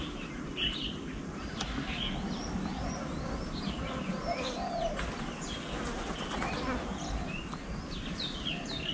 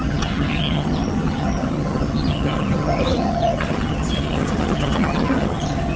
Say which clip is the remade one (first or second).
second